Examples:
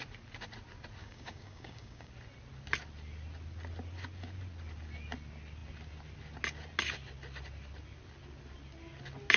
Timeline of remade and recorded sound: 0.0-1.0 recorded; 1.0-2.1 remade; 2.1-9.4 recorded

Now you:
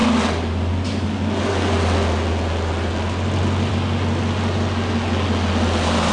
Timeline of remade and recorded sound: 0.0-6.1 recorded

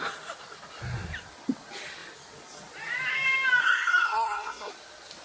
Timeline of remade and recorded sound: 0.0-3.6 recorded; 3.6-4.7 remade; 4.7-5.2 recorded